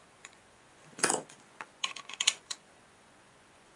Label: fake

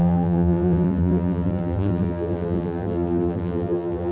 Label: fake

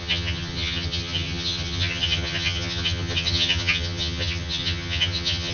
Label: fake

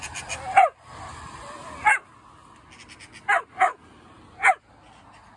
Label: real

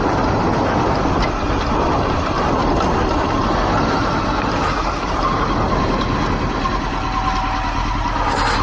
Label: real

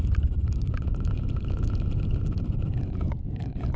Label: real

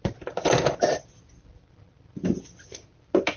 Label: real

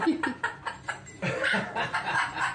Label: fake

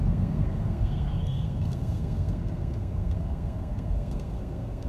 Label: fake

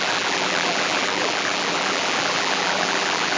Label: fake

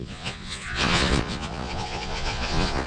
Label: fake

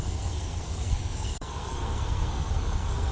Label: fake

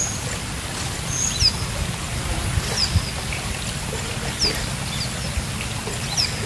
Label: real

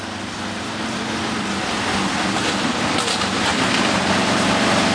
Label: real